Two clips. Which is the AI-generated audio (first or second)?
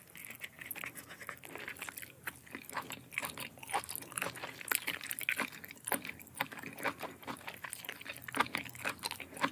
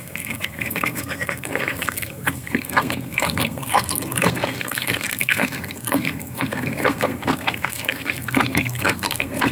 second